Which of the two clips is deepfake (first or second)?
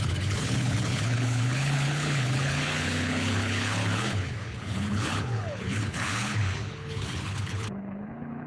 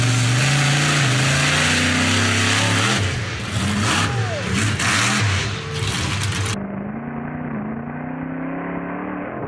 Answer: first